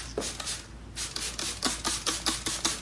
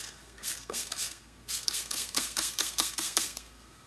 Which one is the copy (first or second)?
second